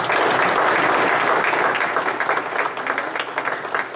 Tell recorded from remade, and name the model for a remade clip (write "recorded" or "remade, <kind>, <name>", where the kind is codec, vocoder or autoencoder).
recorded